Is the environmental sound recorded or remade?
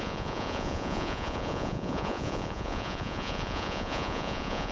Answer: remade